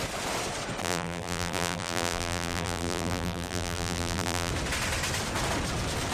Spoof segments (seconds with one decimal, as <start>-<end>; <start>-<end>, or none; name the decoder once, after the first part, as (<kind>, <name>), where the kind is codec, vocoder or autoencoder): 0.8-4.5 (vocoder, BigVGAN v2)